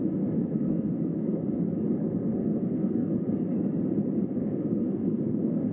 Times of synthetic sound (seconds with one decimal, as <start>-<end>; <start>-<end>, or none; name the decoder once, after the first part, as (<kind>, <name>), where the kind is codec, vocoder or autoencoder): 0.0-1.4 (codec, SNAC); 2.0-3.1; 4.4-5.7